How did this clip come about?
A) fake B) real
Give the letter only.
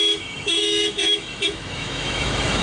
A